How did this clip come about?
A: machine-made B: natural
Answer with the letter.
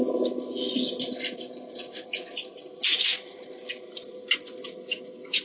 B